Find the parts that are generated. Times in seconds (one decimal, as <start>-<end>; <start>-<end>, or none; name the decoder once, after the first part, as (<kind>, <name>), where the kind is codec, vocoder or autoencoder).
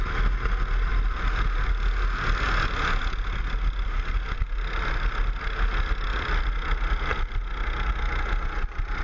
none